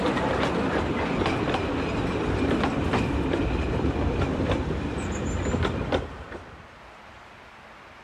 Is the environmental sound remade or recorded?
recorded